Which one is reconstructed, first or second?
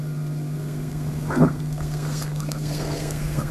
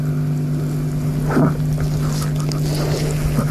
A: first